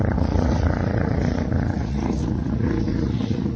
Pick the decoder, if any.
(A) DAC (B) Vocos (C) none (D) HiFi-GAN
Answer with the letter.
B